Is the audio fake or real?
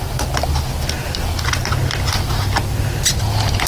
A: real